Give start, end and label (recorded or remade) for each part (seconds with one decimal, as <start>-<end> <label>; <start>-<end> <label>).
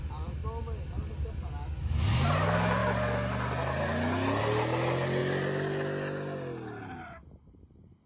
0.0-8.1 recorded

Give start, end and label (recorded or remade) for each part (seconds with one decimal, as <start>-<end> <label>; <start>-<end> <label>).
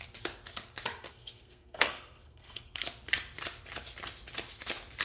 0.0-1.1 recorded; 1.1-2.8 remade; 2.8-5.0 recorded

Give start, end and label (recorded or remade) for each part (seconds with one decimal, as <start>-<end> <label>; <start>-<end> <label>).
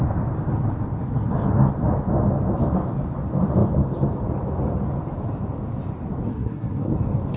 0.0-6.3 recorded; 6.3-6.9 remade; 6.9-7.4 recorded